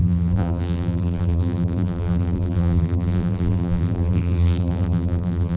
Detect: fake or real fake